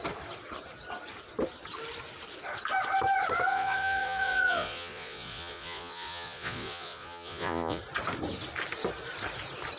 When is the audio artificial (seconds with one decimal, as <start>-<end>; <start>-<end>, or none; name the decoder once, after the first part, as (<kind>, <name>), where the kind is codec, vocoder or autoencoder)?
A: 3.5-7.8 (vocoder, Vocos)